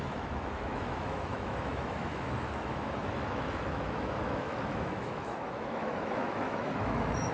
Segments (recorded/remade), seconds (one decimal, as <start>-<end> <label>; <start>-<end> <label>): 0.0-7.3 remade